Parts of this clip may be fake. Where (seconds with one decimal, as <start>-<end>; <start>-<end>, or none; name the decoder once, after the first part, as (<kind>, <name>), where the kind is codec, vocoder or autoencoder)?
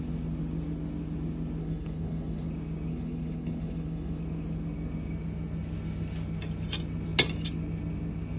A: 1.6-2.5 (codec, HILCodec); 2.9-4.2